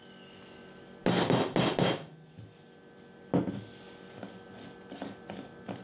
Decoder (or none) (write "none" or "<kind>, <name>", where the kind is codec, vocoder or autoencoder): none